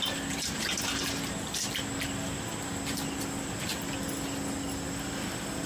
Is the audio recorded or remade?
recorded